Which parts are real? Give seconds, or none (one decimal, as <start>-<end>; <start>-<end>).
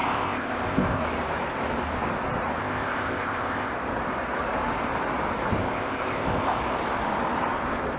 1.0-2.6; 3.7-5.6; 6.6-8.0